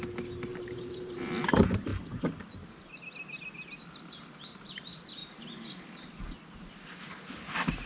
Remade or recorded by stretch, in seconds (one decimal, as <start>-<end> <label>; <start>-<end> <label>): 0.0-0.5 recorded; 0.5-1.3 remade; 1.3-7.9 recorded